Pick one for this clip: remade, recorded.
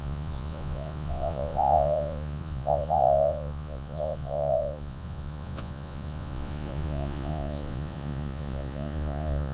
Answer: remade